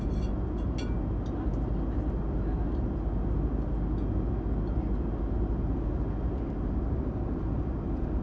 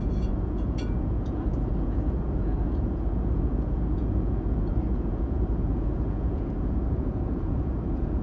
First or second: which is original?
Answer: first